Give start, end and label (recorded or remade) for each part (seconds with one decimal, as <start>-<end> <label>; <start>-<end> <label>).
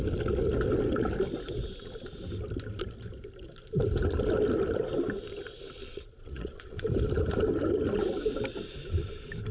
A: 0.0-5.8 recorded; 5.8-6.8 remade; 6.8-9.5 recorded